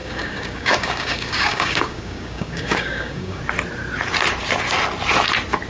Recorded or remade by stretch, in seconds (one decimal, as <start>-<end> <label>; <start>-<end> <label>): 0.0-3.4 remade; 3.4-5.7 recorded